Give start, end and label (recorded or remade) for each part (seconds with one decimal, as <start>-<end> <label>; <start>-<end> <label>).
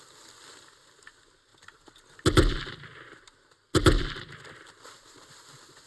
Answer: 0.0-5.9 recorded